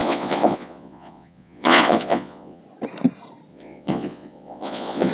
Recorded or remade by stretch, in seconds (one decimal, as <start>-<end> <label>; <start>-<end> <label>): 0.0-2.6 remade; 2.6-3.5 recorded; 3.5-5.1 remade